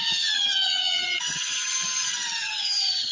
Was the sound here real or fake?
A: fake